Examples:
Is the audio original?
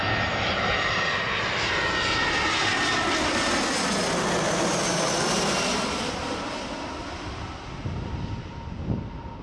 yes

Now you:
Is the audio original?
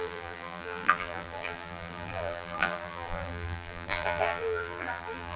no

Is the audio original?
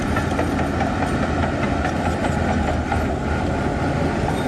no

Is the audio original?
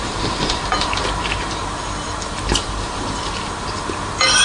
no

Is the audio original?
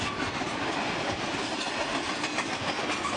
yes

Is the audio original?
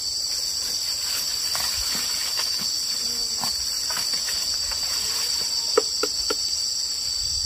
yes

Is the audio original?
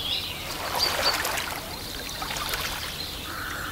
yes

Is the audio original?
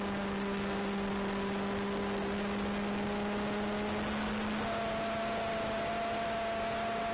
yes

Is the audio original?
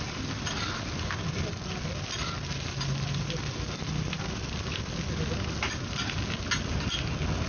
yes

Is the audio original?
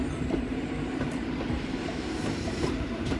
no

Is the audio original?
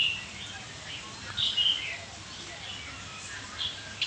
yes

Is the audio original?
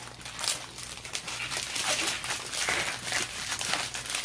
yes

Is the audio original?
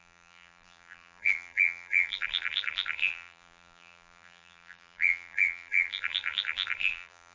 no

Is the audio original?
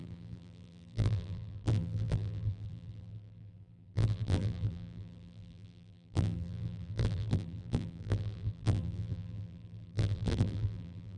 no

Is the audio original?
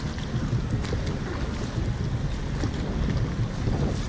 yes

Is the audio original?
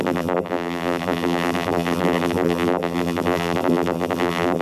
no